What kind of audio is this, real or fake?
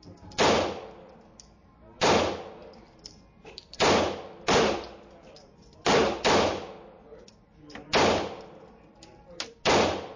real